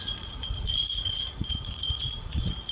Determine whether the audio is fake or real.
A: fake